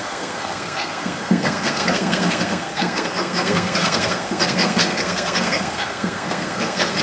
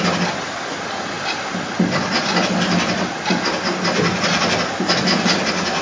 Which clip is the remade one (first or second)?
first